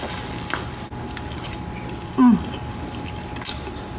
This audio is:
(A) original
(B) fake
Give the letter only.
A